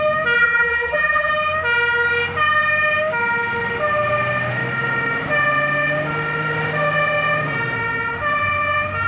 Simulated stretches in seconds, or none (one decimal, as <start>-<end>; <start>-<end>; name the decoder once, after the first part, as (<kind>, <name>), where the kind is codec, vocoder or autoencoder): 0.4-1.3 (vocoder, BigVGAN v2)